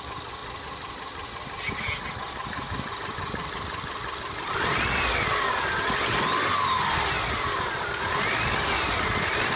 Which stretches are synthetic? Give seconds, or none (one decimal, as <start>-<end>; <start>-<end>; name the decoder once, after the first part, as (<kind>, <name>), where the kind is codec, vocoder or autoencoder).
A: none

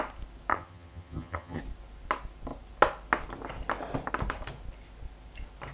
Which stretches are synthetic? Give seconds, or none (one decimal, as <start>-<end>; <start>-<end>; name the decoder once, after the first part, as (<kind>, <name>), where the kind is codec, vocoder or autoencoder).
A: 0.5-1.6 (vocoder, HiFi-GAN)

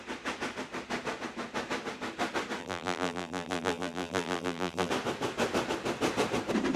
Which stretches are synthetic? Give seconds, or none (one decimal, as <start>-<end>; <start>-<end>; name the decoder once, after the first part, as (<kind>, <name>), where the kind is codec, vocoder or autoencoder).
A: 2.6-4.9 (vocoder, BigVGAN v2)

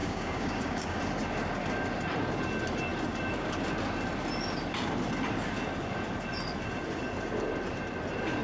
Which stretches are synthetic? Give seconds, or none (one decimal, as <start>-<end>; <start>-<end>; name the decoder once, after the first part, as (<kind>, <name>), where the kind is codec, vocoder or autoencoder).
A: 0.0-1.0 (codec, DAC)